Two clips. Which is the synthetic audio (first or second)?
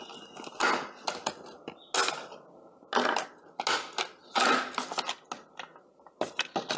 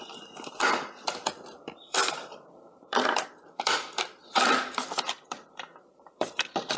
second